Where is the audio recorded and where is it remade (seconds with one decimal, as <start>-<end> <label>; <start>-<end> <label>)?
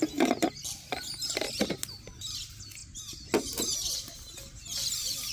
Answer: 0.0-5.3 recorded